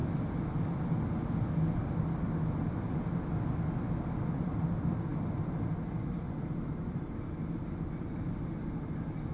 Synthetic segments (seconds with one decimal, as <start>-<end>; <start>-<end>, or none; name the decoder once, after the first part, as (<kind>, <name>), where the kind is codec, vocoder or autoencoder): none